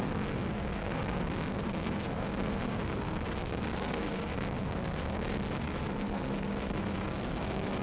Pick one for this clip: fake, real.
fake